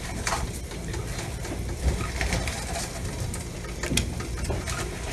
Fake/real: real